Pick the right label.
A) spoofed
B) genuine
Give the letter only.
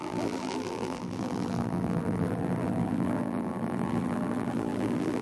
A